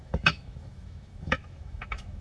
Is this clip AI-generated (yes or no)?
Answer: yes